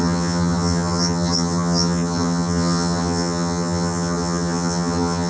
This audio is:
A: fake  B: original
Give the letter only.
A